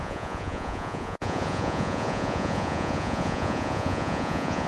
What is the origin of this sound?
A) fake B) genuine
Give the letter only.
A